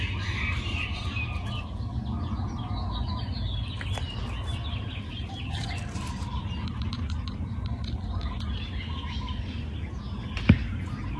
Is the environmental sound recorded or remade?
recorded